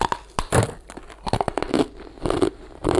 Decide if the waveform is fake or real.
real